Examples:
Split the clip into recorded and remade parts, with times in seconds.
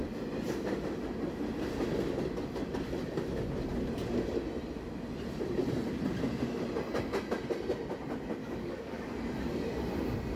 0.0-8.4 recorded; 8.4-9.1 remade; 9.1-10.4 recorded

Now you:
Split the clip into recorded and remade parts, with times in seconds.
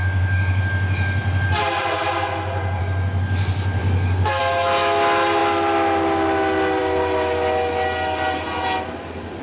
0.0-0.6 remade; 0.6-3.8 recorded; 3.8-4.4 remade; 4.4-9.4 recorded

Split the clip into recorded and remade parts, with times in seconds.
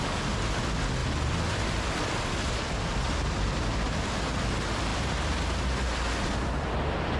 0.0-7.2 recorded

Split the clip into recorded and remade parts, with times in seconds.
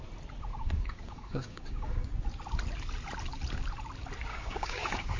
0.0-0.5 recorded; 0.5-2.1 remade; 2.1-4.3 recorded; 4.3-5.2 remade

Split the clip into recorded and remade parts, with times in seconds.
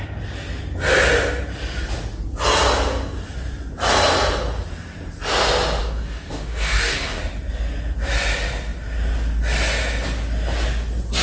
0.0-5.8 recorded; 5.8-7.2 remade; 7.2-11.2 recorded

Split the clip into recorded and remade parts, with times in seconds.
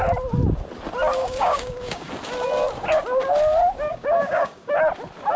0.0-1.2 recorded; 1.2-2.1 remade; 2.1-3.9 recorded; 3.9-4.7 remade; 4.7-5.4 recorded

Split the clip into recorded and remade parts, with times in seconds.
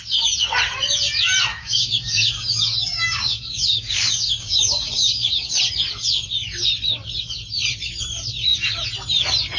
0.0-1.5 recorded; 1.5-5.5 remade; 5.5-9.6 recorded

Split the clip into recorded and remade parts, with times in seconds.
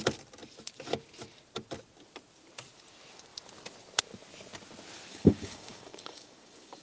0.0-5.1 recorded; 5.1-6.8 remade